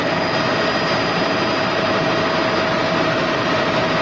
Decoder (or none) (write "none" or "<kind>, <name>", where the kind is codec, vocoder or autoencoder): none